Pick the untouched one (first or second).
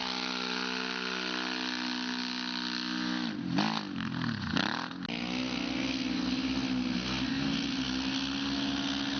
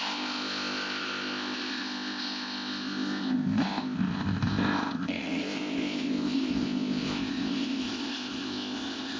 first